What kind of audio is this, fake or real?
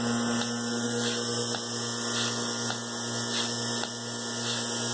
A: real